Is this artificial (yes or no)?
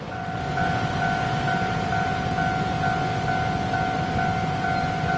no